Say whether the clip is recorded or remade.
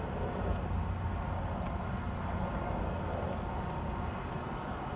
recorded